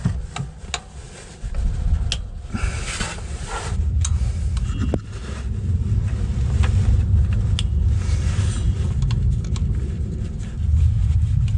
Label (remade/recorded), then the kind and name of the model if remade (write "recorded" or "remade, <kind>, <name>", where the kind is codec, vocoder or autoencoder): recorded